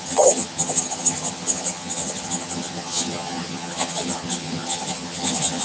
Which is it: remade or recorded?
remade